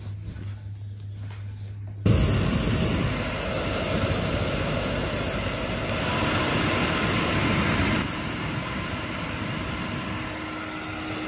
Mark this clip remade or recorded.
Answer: recorded